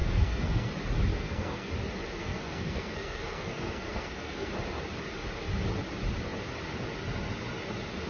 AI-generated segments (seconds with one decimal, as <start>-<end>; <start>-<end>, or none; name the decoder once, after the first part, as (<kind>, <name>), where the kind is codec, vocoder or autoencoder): 0.0-0.7 (codec, SNAC); 1.1-1.7; 2.2-4.5